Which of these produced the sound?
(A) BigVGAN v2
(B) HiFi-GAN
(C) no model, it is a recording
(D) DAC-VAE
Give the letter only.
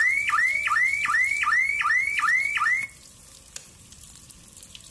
C